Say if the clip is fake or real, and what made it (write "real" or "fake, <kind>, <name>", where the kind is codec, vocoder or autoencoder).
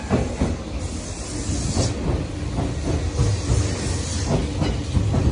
real